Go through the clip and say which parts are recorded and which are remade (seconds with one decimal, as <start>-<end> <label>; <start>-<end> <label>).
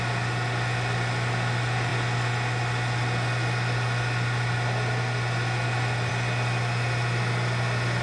0.0-8.0 recorded